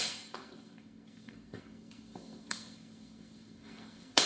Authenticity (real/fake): fake